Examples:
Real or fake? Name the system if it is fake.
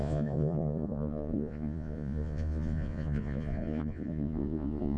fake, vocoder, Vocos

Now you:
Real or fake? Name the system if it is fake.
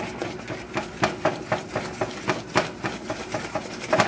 real